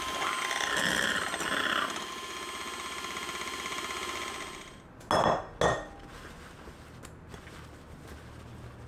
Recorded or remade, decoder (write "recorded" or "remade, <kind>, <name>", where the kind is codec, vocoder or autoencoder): recorded